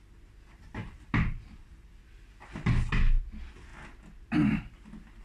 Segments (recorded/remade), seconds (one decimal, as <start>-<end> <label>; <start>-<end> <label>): 0.0-0.8 recorded; 0.8-2.7 remade; 2.7-5.2 recorded